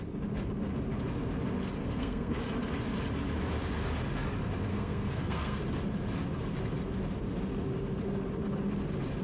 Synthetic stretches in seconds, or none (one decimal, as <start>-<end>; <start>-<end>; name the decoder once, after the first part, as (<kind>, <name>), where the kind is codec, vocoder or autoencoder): 1.8-2.4 (codec, SNAC); 4.7-5.6